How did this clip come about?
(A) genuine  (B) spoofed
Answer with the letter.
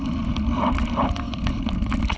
A